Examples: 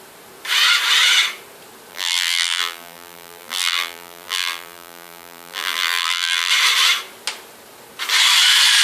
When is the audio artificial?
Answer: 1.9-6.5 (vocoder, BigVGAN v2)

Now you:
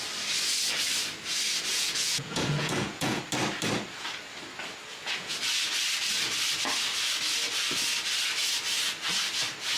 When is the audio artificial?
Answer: 1.7-3.2 (vocoder, Vocos); 4.9-5.4

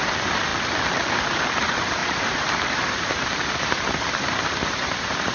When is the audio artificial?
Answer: 0.0-0.5 (vocoder, BigVGAN v2); 1.1-5.3

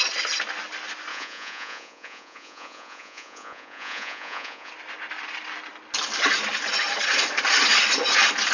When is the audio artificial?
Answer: 1.1-4.7 (vocoder, Vocos)

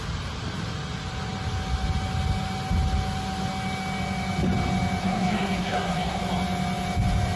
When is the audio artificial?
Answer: 5.0-6.2 (codec, SNAC)

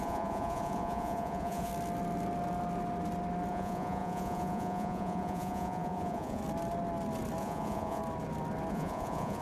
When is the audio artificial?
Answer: 0.0-1.7 (vocoder, Vocos); 3.5-6.4; 7.4-8.0; 8.7-9.4

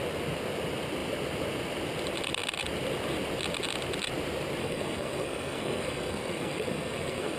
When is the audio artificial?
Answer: 4.6-7.4 (codec, SNAC)